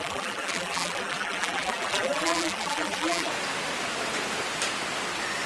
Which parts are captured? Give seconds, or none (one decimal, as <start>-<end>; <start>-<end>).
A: 3.3-5.5